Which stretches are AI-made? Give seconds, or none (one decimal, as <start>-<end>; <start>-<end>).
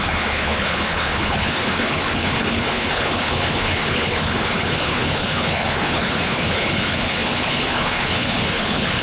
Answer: 0.0-9.0